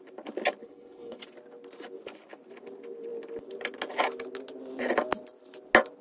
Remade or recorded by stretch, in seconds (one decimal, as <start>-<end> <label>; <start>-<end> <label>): 0.0-0.6 recorded; 0.6-1.2 remade; 1.2-6.0 recorded